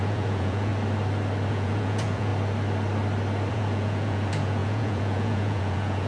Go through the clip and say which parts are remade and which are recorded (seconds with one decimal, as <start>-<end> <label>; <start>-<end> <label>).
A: 0.0-0.7 remade; 0.7-1.5 recorded; 1.5-2.3 remade; 2.3-3.5 recorded; 3.5-6.1 remade